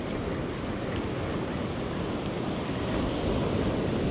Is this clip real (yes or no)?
no